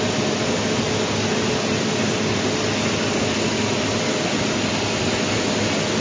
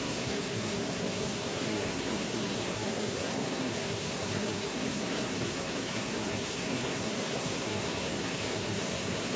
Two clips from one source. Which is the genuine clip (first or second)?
first